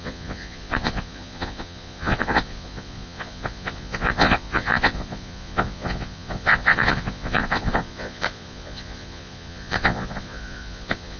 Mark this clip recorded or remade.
remade